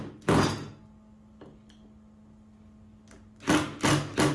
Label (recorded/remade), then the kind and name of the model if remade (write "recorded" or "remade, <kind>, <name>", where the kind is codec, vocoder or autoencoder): recorded